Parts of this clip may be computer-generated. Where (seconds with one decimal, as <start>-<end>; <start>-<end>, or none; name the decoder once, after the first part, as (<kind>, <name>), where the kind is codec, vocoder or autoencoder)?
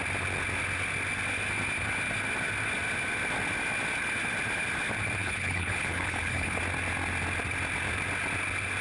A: 5.2-6.6 (codec, HILCodec)